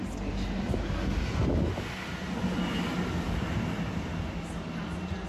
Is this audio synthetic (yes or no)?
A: no